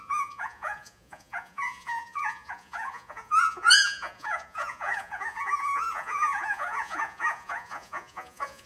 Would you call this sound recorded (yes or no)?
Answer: no